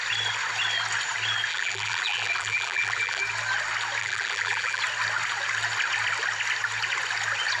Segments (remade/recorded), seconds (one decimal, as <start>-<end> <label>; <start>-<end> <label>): 0.0-1.5 recorded; 1.5-3.2 remade; 3.2-4.0 recorded; 4.0-4.8 remade; 4.8-7.6 recorded